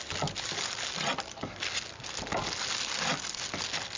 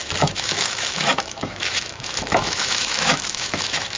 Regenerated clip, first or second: second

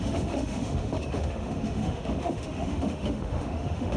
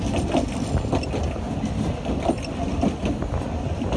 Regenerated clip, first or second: first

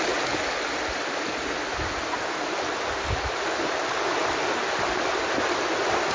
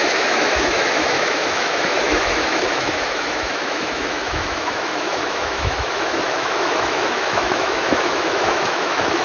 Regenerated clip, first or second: second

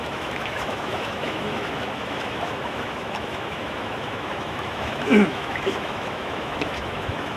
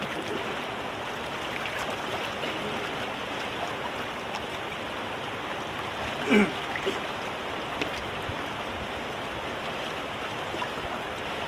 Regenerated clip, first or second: first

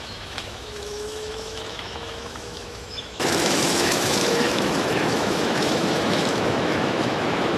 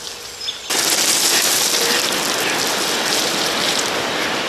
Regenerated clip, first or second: first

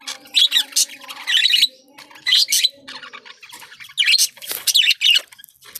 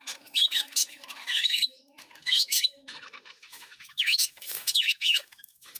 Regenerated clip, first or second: second